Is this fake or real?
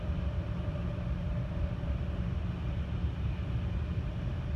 real